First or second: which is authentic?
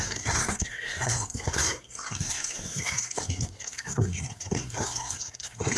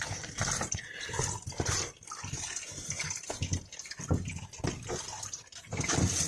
second